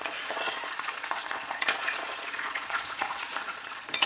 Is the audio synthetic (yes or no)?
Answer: yes